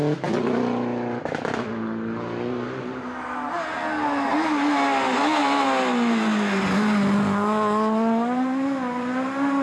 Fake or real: real